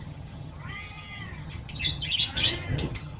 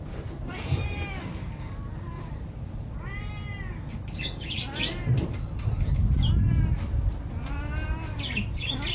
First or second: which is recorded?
second